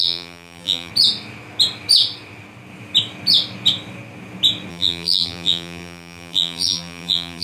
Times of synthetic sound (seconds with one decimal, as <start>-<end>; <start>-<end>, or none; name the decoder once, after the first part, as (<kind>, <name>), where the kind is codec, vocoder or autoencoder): 0.0-0.9 (vocoder, BigVGAN v2); 4.7-7.4